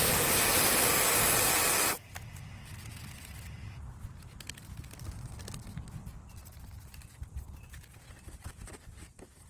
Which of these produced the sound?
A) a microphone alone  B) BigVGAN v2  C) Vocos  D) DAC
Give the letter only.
A